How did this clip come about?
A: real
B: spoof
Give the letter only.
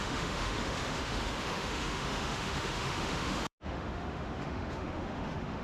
B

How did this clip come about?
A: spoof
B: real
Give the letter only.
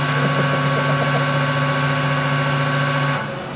B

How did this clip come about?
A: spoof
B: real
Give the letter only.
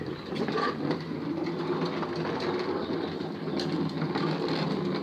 B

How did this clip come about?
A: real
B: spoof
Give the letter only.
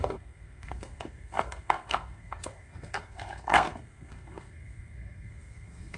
B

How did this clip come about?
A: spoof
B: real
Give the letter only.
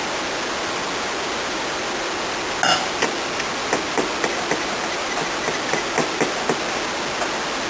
B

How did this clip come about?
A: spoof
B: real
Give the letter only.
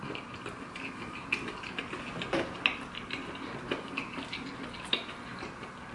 B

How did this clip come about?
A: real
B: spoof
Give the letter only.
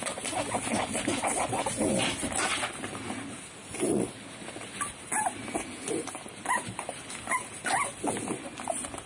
A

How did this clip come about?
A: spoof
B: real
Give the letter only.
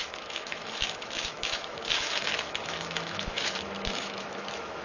A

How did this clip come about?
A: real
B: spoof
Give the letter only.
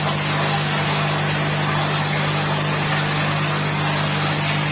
A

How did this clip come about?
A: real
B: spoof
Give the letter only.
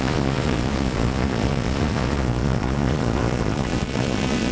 B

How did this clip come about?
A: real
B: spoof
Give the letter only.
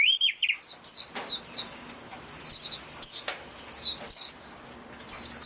A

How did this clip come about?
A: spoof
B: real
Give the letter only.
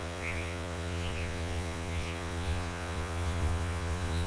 A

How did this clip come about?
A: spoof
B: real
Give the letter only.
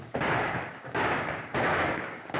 A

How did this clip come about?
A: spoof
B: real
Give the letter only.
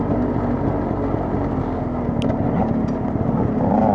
B